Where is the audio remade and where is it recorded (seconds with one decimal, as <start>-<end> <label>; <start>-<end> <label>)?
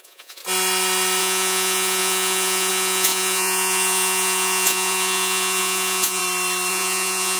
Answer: 0.0-0.4 remade; 0.4-1.2 recorded; 1.2-6.2 remade; 6.2-6.7 recorded; 6.7-7.4 remade